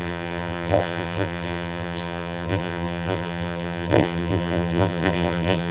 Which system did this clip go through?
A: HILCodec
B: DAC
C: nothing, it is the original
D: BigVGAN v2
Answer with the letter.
D